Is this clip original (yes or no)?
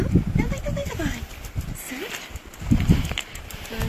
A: yes